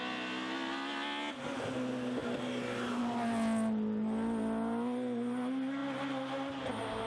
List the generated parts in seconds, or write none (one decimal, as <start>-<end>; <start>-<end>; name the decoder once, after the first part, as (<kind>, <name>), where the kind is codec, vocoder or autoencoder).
none